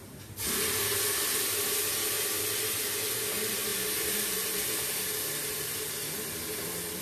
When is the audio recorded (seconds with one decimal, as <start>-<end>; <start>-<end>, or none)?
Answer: 0.0-7.0